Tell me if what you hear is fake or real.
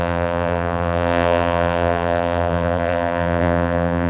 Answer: fake